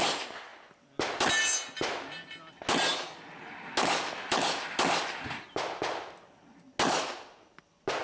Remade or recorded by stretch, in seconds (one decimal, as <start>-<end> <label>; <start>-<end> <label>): 0.0-8.0 recorded